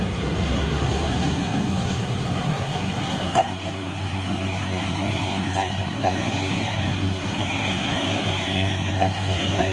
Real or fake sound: fake